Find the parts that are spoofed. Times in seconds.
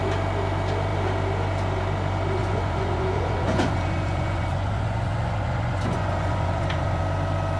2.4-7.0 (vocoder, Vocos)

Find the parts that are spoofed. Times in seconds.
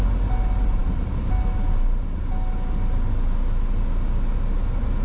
none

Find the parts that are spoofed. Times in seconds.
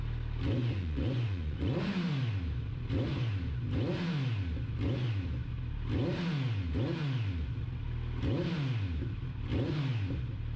0.6-1.8 (vocoder, Vocos)